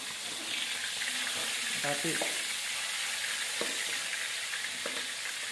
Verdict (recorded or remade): recorded